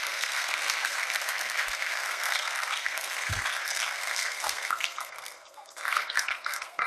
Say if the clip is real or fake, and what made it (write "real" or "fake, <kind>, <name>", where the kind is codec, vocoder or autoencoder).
fake, codec, SNAC